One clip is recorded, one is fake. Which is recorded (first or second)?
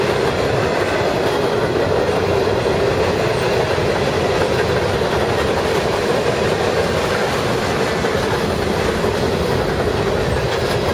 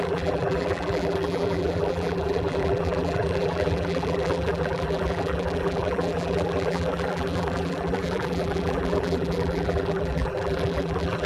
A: first